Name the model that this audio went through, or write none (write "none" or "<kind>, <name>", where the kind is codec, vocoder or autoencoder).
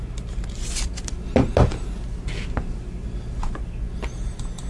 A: none